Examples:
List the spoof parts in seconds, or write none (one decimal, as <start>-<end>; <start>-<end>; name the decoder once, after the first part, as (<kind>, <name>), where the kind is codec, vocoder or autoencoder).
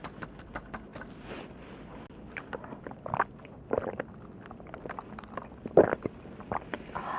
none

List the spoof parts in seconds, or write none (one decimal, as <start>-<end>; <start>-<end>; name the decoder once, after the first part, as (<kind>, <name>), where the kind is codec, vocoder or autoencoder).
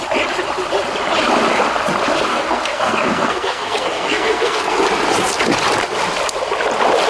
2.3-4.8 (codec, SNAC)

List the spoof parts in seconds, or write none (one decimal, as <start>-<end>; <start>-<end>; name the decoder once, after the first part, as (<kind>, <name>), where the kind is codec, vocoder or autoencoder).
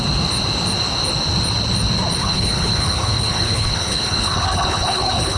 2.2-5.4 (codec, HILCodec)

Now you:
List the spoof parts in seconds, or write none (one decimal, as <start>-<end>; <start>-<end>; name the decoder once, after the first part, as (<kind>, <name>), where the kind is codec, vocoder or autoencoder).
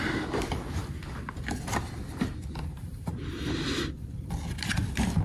0.0-0.8 (vocoder, BigVGAN v2); 1.4-5.2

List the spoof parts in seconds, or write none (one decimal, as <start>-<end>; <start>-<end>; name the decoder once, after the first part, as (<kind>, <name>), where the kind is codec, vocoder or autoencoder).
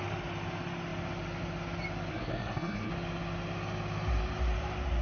2.1-2.9 (codec, SNAC)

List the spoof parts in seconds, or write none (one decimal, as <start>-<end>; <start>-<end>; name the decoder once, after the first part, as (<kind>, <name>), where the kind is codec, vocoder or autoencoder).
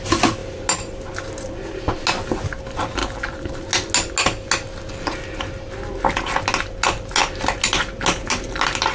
none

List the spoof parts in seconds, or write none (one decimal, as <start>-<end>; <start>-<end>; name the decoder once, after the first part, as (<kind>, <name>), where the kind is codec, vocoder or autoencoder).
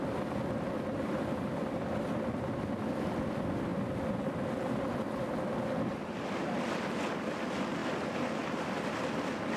none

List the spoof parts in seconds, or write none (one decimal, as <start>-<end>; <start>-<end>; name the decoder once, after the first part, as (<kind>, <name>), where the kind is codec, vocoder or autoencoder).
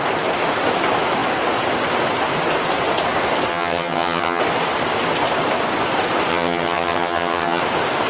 3.5-4.4 (vocoder, HiFi-GAN); 6.3-7.6